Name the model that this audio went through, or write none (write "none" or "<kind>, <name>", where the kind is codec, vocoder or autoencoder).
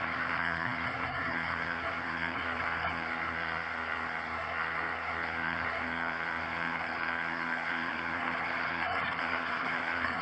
codec, SNAC